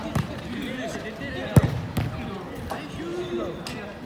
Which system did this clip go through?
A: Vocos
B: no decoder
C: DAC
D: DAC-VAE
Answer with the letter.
B